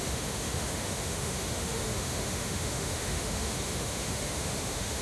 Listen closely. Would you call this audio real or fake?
fake